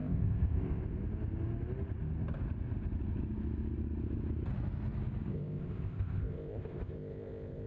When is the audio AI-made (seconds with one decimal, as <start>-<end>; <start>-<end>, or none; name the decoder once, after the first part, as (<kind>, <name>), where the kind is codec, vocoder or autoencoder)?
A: 0.0-0.8 (codec, ZipCodec); 5.3-7.7